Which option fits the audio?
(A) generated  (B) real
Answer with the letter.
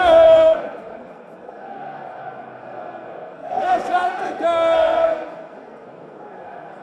A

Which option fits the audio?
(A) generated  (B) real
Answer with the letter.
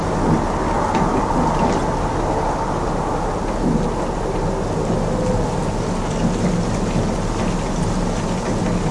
B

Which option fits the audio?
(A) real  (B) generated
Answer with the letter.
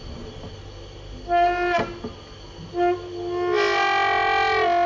A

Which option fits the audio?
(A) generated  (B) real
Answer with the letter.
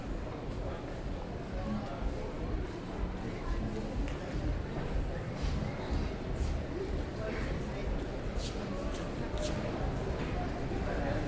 B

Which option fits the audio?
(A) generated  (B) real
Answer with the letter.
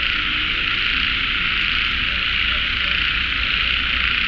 B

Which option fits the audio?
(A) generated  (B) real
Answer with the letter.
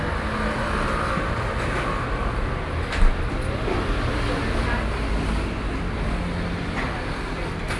B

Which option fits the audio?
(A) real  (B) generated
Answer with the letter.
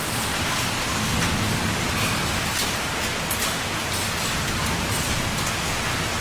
A